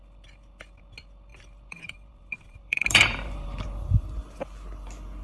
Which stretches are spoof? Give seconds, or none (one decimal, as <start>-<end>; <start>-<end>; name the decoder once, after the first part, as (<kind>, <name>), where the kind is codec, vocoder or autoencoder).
1.3-4.4 (vocoder, BigVGAN v2)

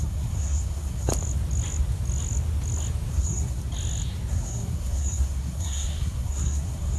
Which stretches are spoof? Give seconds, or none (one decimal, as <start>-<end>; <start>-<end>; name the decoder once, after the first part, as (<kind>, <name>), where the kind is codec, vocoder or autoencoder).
0.0-1.1 (codec, SNAC); 3.1-3.6; 4.3-7.0